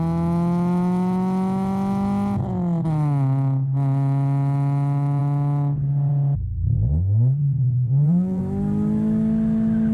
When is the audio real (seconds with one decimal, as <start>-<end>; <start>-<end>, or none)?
0.0-7.4; 8.4-9.9